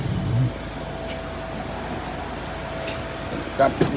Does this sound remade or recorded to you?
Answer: recorded